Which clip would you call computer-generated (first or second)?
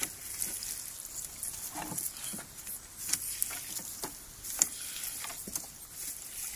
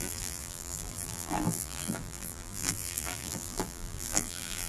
second